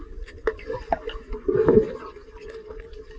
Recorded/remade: recorded